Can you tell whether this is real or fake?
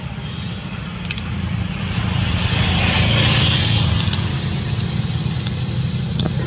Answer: real